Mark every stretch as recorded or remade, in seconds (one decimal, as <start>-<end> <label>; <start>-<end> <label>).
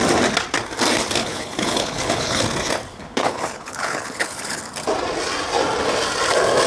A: 0.0-1.2 recorded; 1.2-2.4 remade; 2.4-2.9 recorded; 2.9-4.6 remade; 4.6-6.7 recorded